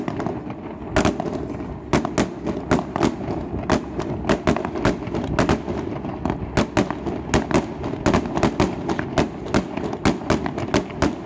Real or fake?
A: real